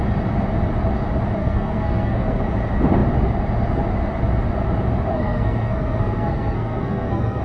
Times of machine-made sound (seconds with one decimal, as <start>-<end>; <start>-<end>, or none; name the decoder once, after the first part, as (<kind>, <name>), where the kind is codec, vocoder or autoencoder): 1.4-2.4 (codec, SNAC); 5.1-7.4